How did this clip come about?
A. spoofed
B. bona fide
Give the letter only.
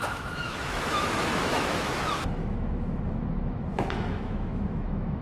A